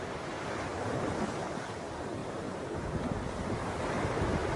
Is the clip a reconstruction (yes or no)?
yes